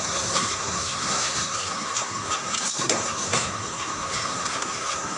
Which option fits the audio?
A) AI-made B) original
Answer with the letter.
A